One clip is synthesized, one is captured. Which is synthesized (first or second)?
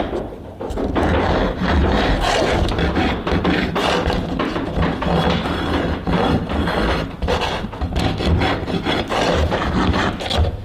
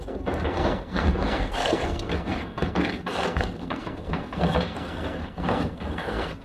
second